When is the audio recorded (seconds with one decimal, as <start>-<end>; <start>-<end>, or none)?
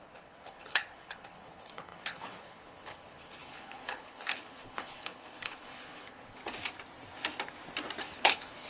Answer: 6.4-8.0